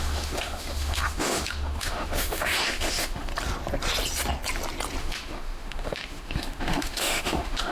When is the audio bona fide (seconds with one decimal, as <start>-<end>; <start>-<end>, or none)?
3.3-5.0